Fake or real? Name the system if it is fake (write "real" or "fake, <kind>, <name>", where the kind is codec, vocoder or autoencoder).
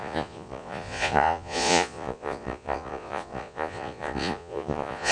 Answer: fake, vocoder, Vocos